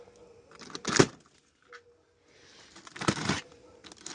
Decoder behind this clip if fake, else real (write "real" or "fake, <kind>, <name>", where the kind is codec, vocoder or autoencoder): real